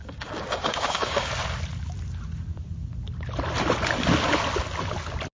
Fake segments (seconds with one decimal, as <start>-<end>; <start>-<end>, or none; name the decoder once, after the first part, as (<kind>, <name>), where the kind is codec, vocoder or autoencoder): 0.0-1.3 (codec, DAC)